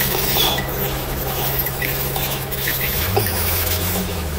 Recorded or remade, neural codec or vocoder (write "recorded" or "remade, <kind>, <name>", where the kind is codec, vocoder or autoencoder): remade, autoencoder, DAC-VAE